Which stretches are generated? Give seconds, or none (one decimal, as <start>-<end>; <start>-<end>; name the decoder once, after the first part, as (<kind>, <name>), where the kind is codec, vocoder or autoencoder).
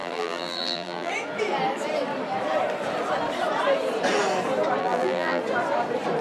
0.0-1.1 (vocoder, BigVGAN v2); 4.8-5.4